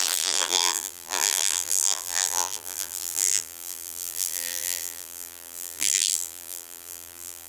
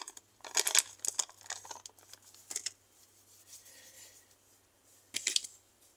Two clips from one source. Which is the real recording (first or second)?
second